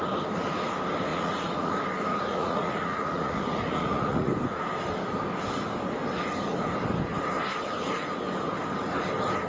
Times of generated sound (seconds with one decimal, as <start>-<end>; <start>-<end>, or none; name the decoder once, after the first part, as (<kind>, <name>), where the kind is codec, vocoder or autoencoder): 1.1-1.7 (vocoder, Vocos); 2.1-4.3